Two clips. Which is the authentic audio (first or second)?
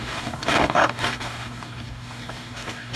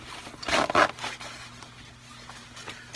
second